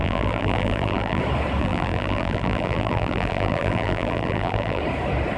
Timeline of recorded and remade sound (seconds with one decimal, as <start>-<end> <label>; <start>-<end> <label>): 0.0-1.2 remade; 1.2-1.6 recorded; 1.6-4.8 remade; 4.8-5.4 recorded